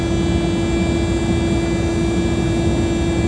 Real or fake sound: real